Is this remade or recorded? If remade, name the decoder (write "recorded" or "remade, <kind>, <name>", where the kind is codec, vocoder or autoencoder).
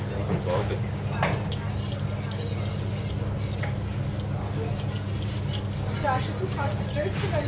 recorded